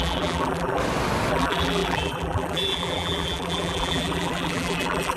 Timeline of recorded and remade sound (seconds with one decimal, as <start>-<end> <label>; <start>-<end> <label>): 0.0-0.8 remade; 0.8-1.3 recorded; 1.3-5.2 remade